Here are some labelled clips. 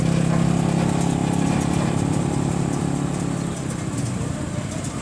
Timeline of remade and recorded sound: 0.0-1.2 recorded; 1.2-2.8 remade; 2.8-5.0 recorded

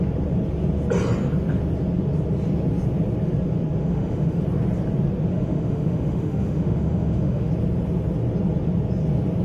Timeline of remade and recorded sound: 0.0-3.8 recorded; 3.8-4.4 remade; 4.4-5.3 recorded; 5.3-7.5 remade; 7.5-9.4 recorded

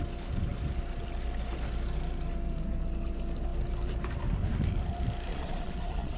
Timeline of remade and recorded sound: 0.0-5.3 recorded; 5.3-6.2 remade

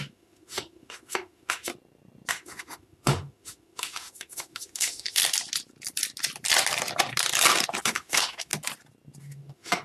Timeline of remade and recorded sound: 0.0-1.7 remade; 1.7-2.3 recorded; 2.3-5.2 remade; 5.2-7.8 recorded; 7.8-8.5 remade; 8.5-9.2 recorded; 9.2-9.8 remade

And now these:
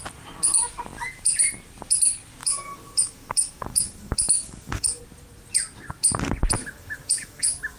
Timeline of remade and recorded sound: 0.0-2.4 recorded; 2.4-5.0 remade; 5.0-6.6 recorded; 6.6-7.8 remade

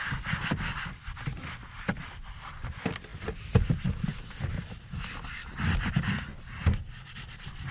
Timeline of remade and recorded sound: 0.0-7.7 recorded

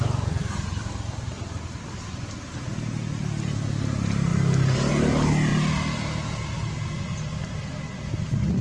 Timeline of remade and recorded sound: 0.0-8.6 recorded